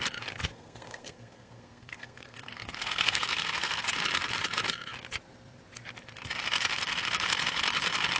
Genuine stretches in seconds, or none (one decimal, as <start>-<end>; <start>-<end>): 0.0-0.5; 3.8-8.2